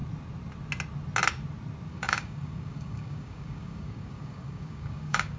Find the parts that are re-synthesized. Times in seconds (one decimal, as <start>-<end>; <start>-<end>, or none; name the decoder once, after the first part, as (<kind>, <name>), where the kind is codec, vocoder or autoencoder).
1.9-5.4 (codec, DAC)

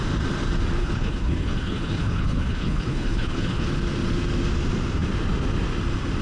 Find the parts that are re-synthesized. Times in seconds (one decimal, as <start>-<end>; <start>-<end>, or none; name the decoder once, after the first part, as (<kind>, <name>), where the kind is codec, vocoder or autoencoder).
0.8-3.7 (codec, HILCodec)

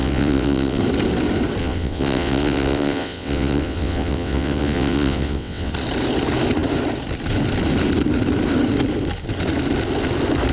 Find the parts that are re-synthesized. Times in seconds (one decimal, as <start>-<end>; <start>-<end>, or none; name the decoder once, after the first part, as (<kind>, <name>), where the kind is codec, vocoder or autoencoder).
0.0-0.8 (vocoder, WaveNeXt); 1.6-5.7

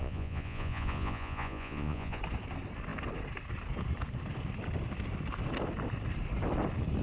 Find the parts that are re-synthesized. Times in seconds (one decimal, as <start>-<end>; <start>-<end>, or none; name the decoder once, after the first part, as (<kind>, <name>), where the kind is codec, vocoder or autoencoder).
0.0-2.2 (vocoder, Vocos)

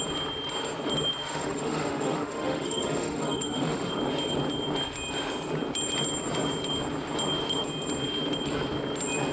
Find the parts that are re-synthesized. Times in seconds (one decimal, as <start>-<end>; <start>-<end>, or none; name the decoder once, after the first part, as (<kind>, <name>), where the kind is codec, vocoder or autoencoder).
1.2-3.9 (autoencoder, DAC-VAE)